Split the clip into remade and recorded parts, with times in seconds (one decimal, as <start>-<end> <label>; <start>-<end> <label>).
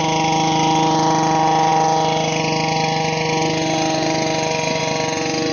0.0-5.5 recorded